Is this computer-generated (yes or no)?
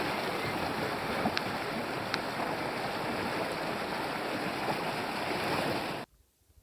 no